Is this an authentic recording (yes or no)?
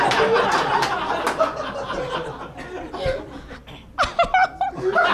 yes